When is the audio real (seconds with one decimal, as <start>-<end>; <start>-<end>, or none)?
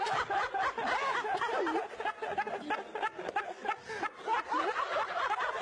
0.0-5.6